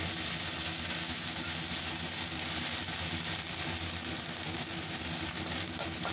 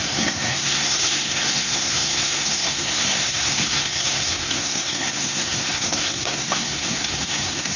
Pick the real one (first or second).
first